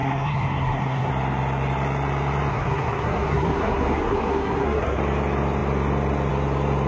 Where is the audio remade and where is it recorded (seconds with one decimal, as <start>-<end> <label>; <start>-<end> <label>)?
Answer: 0.0-1.1 remade; 1.1-2.5 recorded; 2.5-5.0 remade; 5.0-6.9 recorded